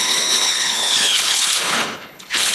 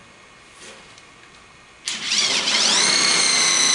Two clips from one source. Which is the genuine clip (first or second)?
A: second